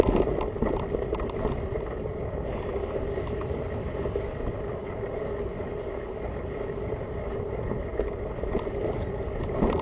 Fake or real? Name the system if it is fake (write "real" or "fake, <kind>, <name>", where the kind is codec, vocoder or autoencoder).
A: real